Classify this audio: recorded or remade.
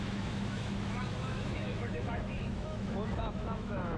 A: remade